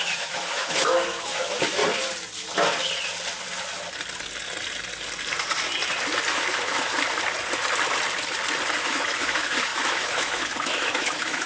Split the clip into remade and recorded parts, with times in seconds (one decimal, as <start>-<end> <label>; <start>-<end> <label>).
0.0-1.8 remade; 1.8-6.3 recorded; 6.3-6.9 remade; 6.9-8.8 recorded; 8.8-11.5 remade